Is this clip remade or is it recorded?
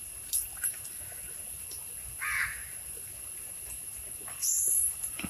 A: remade